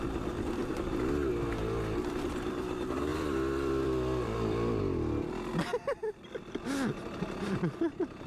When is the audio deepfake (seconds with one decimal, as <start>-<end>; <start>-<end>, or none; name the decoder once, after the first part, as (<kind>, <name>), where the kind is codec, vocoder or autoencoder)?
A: 3.1-4.8 (vocoder, BigVGAN v2); 5.7-6.6